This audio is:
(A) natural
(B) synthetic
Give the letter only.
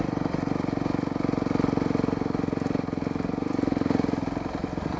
A